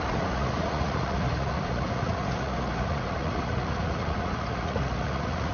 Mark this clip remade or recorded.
remade